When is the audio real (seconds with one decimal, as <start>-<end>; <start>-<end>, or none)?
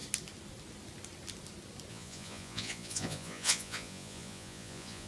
0.0-1.9